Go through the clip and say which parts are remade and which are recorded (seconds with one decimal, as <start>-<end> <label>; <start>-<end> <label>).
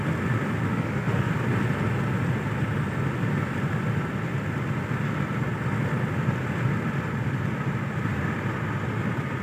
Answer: 0.0-0.7 recorded; 0.7-1.3 remade; 1.3-9.4 recorded